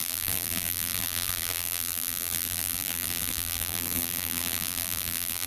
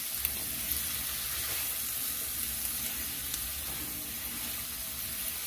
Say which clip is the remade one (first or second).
first